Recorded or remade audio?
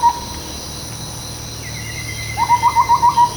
recorded